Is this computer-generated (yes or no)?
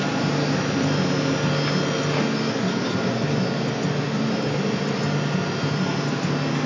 no